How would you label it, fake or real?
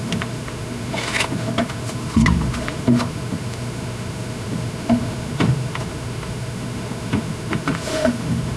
fake